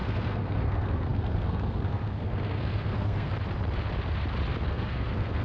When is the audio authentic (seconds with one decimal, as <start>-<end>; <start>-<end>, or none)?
3.3-4.7